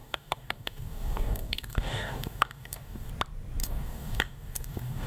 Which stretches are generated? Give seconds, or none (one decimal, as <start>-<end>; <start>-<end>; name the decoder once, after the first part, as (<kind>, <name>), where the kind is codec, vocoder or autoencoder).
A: 0.0-3.1 (codec, DAC); 3.6-5.1